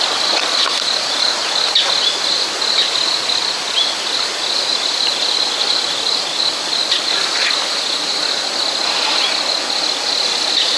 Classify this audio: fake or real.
real